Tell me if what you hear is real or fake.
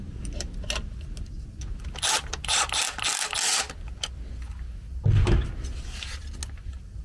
real